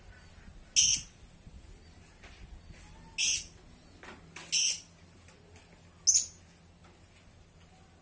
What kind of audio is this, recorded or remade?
recorded